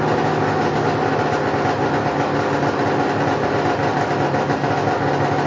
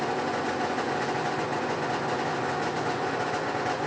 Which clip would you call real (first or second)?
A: first